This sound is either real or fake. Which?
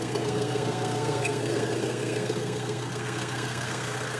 fake